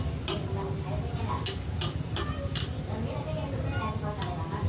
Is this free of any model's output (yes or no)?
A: yes